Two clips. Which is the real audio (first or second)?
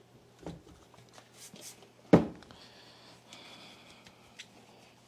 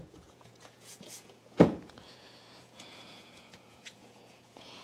first